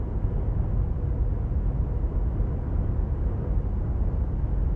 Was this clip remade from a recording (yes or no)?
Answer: no